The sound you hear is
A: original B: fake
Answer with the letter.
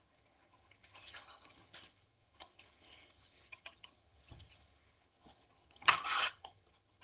B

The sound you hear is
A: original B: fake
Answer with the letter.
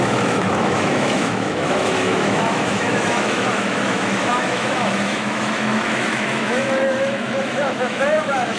B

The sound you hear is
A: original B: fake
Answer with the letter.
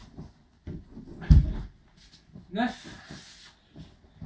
A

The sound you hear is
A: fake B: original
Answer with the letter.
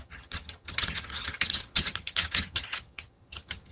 A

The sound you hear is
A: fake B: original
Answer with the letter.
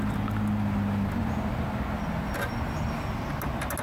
B